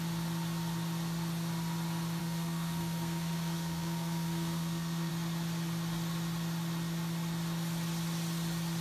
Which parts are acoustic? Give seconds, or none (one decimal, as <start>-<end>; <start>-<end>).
0.0-2.2; 5.1-8.8